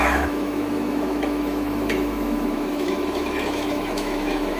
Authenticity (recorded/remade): remade